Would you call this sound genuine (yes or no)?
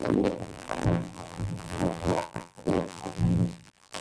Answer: no